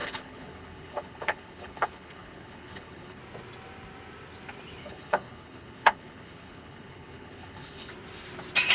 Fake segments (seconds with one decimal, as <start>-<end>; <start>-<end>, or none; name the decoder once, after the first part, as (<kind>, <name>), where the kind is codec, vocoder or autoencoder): 0.0-3.2 (codec, HILCodec); 4.8-7.9